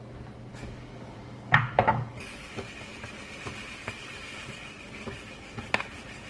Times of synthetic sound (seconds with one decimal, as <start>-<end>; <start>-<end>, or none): 0.5-2.9; 3.8-5.8